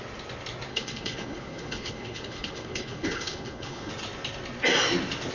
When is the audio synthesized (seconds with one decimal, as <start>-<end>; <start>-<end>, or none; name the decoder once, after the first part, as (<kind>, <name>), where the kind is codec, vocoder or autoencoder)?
0.7-3.9 (codec, HILCodec)